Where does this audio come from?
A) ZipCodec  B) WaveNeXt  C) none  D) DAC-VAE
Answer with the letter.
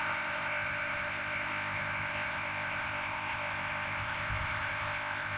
A